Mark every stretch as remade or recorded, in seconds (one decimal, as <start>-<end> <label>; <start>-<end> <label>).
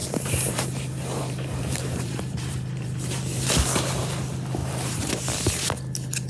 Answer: 0.0-3.1 remade; 3.1-4.6 recorded; 4.6-5.1 remade; 5.1-6.3 recorded